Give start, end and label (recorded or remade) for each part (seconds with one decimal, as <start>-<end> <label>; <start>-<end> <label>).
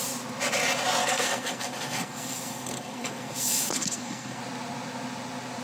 0.0-1.0 recorded; 1.0-4.4 remade; 4.4-5.6 recorded